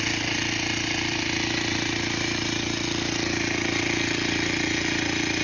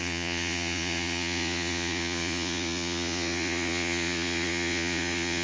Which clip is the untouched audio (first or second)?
first